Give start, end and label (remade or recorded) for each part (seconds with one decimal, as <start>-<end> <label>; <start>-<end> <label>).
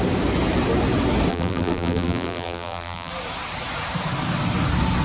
0.0-1.3 recorded; 1.3-3.1 remade; 3.1-5.0 recorded